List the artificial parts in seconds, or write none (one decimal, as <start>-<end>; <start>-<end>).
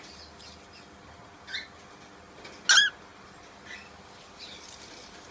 none